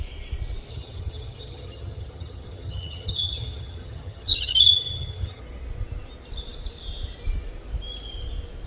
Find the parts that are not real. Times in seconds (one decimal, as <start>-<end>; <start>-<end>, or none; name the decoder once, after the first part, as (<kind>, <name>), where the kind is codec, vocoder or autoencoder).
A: 0.7-5.4 (vocoder, HiFi-GAN)